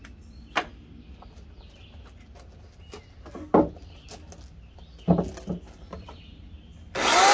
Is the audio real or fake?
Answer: real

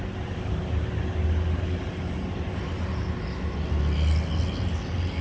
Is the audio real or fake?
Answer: real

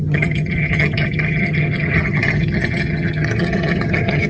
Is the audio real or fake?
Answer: fake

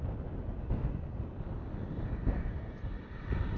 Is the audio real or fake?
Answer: real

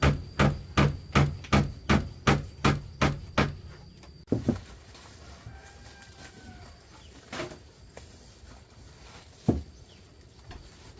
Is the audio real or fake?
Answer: real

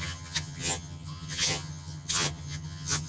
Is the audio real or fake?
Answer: fake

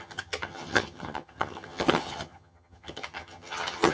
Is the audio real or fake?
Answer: fake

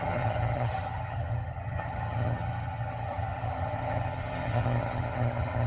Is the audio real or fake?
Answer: fake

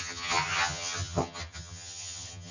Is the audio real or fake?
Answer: fake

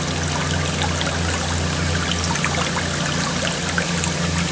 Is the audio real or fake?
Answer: real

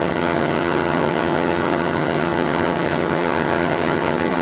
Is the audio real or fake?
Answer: fake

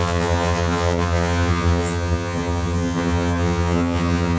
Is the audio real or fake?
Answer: fake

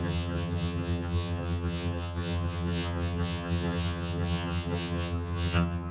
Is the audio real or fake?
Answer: fake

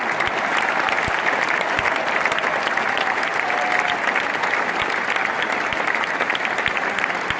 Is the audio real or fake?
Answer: real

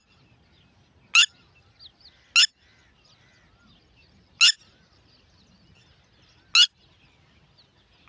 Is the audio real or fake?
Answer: real